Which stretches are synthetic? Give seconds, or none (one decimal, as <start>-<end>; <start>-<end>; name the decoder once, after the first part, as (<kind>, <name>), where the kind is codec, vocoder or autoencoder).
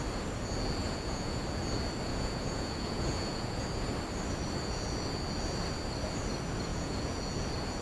0.8-1.4 (vocoder, Vocos); 2.1-3.6; 6.7-7.2